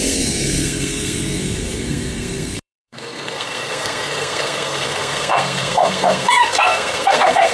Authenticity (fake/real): fake